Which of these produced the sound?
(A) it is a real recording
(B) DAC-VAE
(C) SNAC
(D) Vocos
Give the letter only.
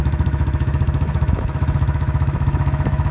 B